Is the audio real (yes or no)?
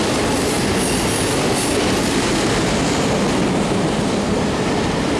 yes